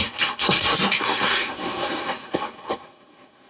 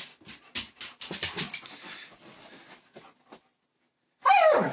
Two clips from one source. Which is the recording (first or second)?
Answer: second